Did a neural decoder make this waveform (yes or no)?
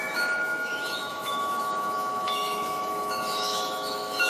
yes